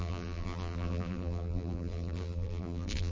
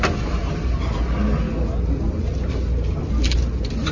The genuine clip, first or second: second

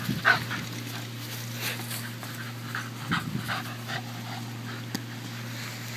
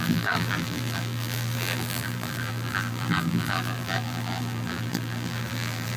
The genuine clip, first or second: first